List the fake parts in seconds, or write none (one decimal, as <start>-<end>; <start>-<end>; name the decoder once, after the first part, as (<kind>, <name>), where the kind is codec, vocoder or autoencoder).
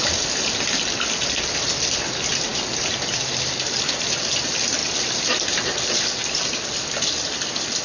2.5-3.7 (vocoder, BigVGAN v2); 4.8-5.9